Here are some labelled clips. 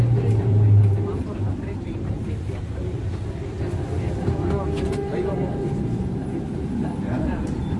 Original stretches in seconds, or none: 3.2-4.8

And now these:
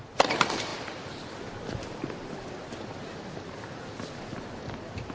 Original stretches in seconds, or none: 0.0-5.1

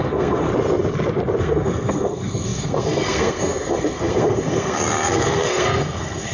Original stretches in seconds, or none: 0.5-1.4

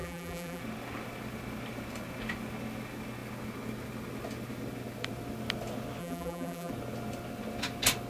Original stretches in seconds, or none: 0.6-6.0; 6.7-8.1

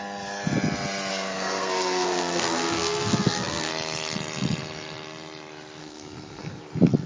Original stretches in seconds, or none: 0.0-1.1; 3.7-5.8; 6.6-7.1

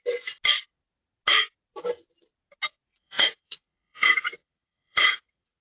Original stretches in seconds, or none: 0.0-2.9